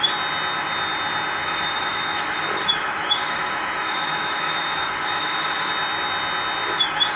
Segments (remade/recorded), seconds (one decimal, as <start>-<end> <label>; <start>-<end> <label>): 0.0-1.4 recorded; 1.4-5.7 remade; 5.7-7.2 recorded